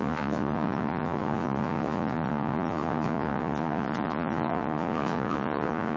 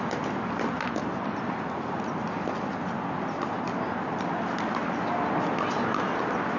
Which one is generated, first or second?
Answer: first